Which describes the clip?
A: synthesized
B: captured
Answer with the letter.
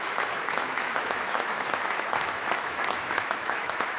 A